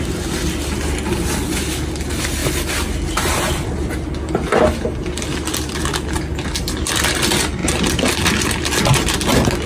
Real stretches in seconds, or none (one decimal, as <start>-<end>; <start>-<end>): 0.0-2.4; 3.9-9.7